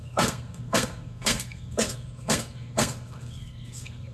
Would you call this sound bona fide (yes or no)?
no